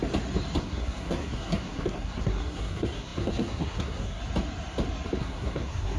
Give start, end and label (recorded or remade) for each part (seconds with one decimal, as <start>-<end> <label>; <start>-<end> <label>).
0.0-0.6 recorded; 0.6-4.2 remade; 4.2-5.2 recorded; 5.2-6.0 remade